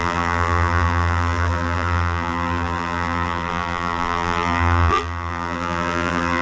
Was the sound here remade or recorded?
remade